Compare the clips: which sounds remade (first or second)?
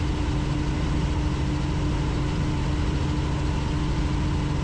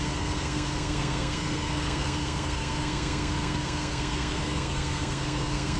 second